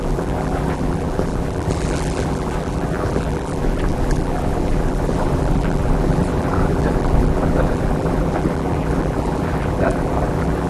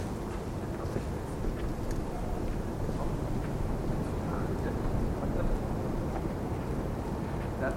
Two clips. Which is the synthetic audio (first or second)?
first